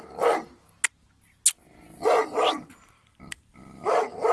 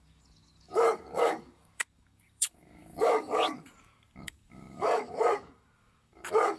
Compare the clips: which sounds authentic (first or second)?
first